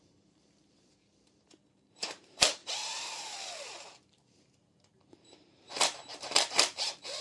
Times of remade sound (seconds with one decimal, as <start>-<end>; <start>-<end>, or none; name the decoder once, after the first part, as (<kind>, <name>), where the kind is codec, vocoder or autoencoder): 0.0-7.2 (vocoder, BigVGAN v2)